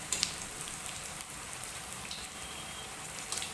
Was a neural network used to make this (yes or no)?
yes